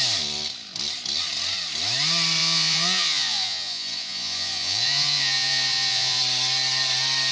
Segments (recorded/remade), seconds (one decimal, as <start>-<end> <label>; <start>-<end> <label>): 0.0-2.4 recorded; 2.4-6.2 remade; 6.2-7.3 recorded